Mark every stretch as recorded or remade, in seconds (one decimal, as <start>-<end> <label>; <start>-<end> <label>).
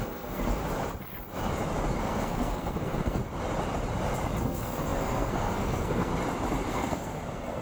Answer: 0.0-0.6 remade; 0.6-2.0 recorded; 2.0-3.2 remade; 3.2-4.4 recorded; 4.4-6.1 remade; 6.1-6.7 recorded; 6.7-7.6 remade